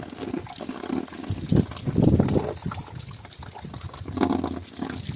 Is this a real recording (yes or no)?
yes